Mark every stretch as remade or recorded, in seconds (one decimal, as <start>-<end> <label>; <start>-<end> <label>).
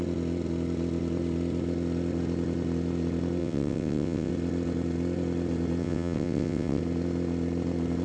0.0-3.4 recorded; 3.4-4.3 remade; 4.3-5.8 recorded; 5.8-6.8 remade; 6.8-8.0 recorded